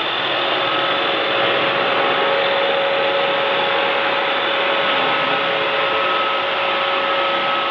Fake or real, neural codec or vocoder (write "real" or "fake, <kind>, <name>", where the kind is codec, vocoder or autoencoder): real